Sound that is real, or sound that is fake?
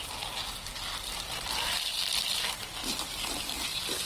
fake